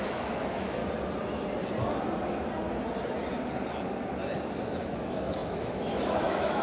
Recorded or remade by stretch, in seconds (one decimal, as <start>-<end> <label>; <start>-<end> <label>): 0.0-0.8 remade; 0.8-4.8 recorded; 4.8-6.6 remade